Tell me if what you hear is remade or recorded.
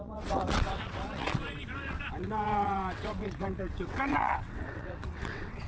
remade